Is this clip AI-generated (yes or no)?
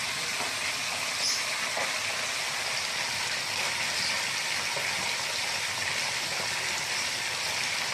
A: no